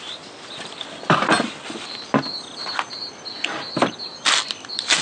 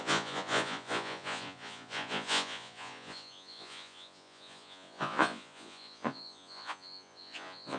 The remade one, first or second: second